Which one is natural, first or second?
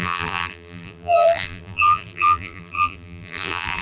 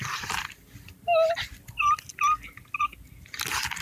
second